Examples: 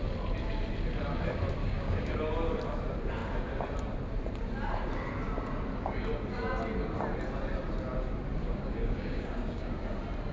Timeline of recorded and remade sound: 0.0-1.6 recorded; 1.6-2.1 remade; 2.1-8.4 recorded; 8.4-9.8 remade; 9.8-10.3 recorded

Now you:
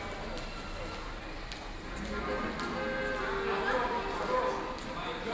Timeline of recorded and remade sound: 0.0-5.3 recorded